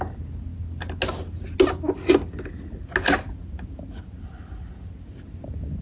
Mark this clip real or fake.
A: real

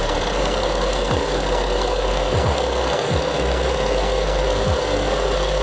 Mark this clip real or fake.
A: fake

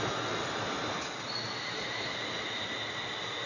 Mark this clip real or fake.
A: real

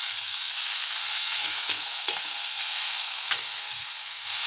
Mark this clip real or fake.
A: fake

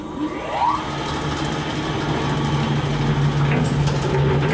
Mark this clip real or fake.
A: real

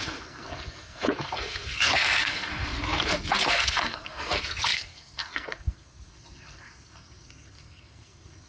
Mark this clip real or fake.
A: fake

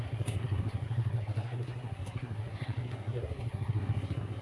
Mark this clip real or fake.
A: fake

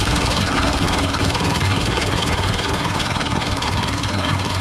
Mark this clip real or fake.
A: fake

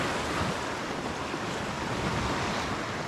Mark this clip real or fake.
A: real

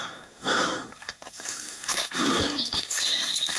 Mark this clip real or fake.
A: fake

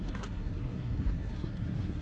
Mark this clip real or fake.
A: fake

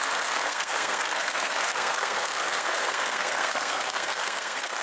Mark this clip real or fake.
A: fake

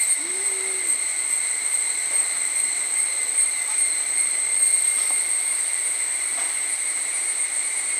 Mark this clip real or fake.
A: real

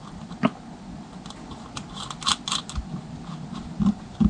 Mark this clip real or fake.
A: real